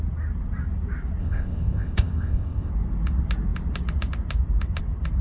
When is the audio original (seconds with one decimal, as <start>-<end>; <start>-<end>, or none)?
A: 0.0-1.2; 2.7-5.2